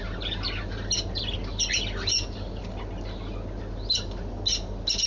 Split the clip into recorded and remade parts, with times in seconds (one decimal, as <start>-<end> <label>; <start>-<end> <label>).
0.0-5.1 recorded

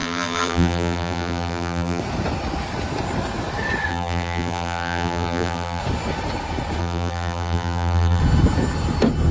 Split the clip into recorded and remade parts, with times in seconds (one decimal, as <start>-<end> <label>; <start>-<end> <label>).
0.0-2.0 remade; 2.0-3.9 recorded; 3.9-5.8 remade; 5.8-6.8 recorded; 6.8-8.2 remade; 8.2-9.3 recorded

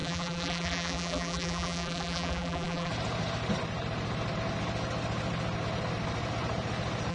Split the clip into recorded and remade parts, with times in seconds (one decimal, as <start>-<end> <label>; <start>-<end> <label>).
0.0-2.9 remade; 2.9-7.1 recorded

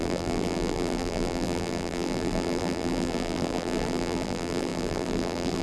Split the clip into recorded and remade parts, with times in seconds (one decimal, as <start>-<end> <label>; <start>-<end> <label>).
0.0-5.6 remade

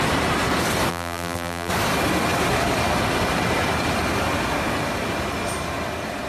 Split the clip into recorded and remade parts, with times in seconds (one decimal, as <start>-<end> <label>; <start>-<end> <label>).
0.0-0.9 recorded; 0.9-1.7 remade; 1.7-6.3 recorded

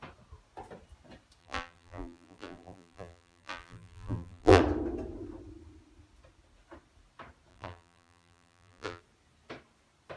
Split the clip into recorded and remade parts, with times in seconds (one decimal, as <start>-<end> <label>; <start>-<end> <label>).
0.0-1.4 recorded; 1.4-4.6 remade; 4.6-7.5 recorded; 7.5-9.0 remade; 9.0-10.2 recorded

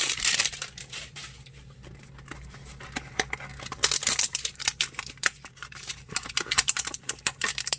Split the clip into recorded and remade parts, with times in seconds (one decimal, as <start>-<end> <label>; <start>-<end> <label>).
0.0-1.2 remade; 1.2-3.7 recorded; 3.7-7.8 remade